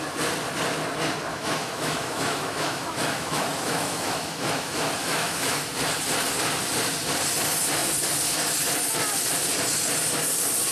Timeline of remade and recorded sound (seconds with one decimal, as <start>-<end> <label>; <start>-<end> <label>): 0.0-1.3 recorded; 1.3-5.6 remade; 5.6-10.7 recorded